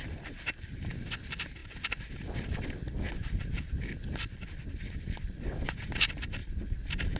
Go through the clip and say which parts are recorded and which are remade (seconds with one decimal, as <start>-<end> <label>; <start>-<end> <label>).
0.0-7.2 recorded